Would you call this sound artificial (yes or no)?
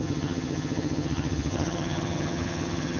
yes